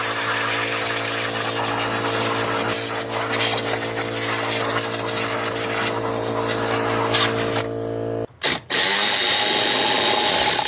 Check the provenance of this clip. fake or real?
real